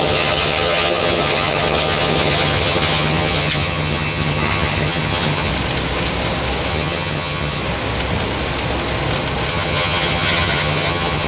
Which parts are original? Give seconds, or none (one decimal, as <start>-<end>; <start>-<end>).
5.5-6.7; 7.6-9.5